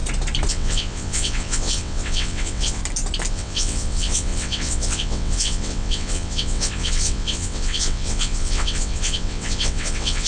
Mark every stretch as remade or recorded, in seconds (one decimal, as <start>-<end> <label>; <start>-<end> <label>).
0.0-0.5 recorded; 0.5-2.8 remade; 2.8-3.3 recorded; 3.3-10.3 remade